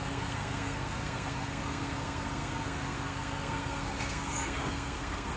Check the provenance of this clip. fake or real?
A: fake